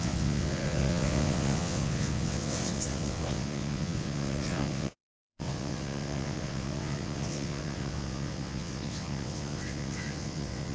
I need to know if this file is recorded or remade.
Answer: remade